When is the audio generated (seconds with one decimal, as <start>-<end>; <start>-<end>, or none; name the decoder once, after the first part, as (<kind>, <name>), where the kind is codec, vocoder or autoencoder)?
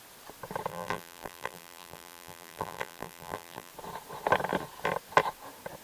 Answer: 0.7-3.7 (vocoder, BigVGAN v2)